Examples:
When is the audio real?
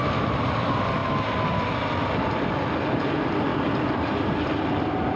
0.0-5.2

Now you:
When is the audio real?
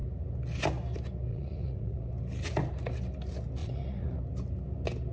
0.0-1.3; 2.1-3.6; 4.2-5.1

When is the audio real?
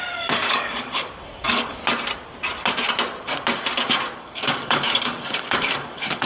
1.8-4.2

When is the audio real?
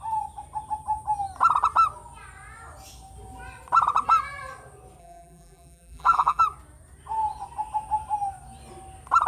0.0-5.0; 6.4-9.3